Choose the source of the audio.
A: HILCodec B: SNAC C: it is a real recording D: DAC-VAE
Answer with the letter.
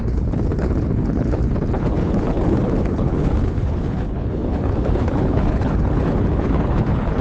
A